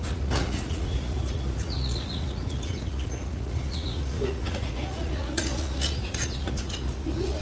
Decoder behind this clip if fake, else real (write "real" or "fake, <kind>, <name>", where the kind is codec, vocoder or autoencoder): fake, vocoder, Vocos